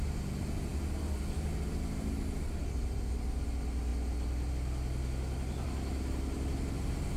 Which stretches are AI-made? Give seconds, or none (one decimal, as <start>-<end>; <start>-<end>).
none